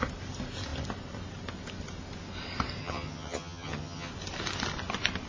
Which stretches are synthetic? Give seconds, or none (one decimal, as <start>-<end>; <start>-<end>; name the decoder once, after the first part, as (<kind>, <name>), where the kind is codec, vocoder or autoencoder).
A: 2.8-4.1 (vocoder, HiFi-GAN)